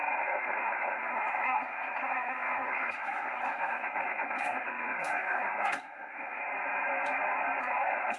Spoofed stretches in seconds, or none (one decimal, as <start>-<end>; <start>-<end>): 0.0-6.4; 7.6-8.2